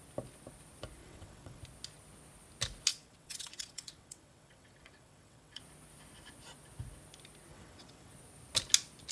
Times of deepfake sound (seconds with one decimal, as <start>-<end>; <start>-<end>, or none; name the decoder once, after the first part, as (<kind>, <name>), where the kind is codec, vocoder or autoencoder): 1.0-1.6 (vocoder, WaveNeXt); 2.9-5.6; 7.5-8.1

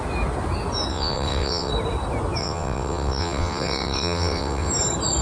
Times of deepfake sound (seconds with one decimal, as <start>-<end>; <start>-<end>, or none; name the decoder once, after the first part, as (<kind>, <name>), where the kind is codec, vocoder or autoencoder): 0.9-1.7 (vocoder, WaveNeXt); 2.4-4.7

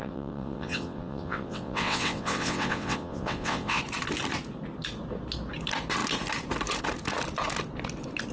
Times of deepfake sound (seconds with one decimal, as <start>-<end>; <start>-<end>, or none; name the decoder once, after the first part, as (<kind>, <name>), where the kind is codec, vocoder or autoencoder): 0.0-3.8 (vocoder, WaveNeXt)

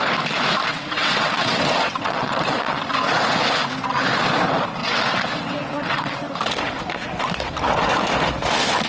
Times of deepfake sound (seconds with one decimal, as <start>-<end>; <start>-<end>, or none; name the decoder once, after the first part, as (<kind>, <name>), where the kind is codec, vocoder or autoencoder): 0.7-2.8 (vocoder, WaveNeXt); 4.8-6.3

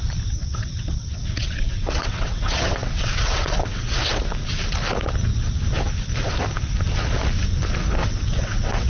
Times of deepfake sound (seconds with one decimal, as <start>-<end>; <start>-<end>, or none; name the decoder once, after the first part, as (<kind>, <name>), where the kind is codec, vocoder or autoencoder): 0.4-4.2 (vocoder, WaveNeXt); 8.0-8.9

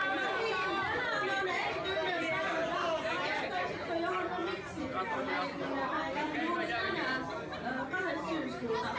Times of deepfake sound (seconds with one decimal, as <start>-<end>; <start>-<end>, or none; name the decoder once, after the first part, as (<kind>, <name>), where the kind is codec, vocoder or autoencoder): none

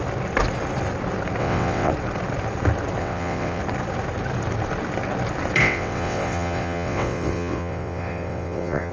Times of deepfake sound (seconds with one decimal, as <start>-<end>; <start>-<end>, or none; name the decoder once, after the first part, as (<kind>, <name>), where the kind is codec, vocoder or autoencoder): 1.4-1.9 (vocoder, WaveNeXt); 3.0-3.6; 5.6-8.9